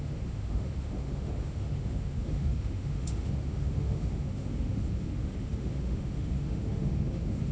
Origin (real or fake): fake